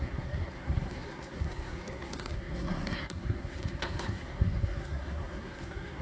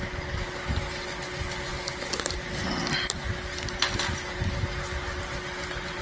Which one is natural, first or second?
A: second